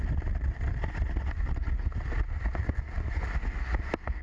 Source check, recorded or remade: recorded